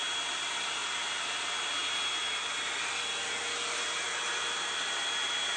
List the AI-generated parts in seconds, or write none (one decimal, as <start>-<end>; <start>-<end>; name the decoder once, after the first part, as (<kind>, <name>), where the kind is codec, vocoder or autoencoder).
none